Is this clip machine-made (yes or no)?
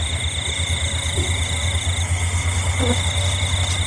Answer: no